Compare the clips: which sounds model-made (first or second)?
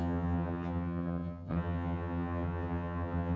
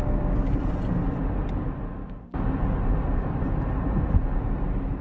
first